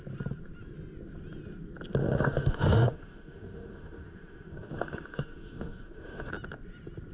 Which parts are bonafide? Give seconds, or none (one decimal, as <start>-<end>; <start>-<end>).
0.0-2.0; 6.3-7.1